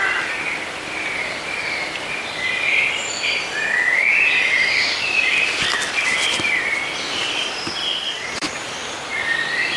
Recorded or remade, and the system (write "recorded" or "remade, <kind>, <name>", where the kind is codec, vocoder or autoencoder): remade, vocoder, BigVGAN v2